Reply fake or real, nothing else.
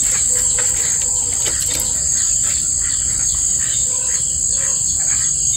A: real